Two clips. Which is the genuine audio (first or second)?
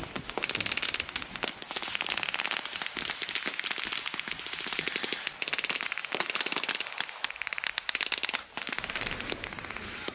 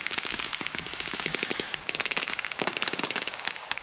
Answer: first